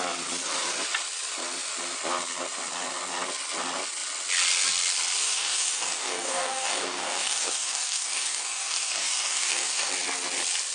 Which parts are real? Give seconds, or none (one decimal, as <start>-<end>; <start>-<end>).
0.0-5.2; 9.9-10.7